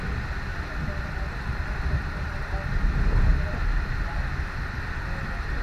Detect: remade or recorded recorded